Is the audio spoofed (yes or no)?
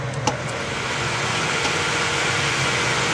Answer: yes